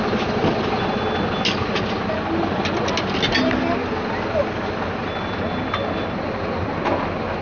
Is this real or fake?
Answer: real